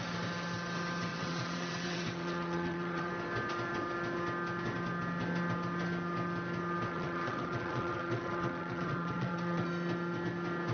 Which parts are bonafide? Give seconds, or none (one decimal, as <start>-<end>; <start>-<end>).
0.0-1.1; 3.1-6.9; 9.7-10.7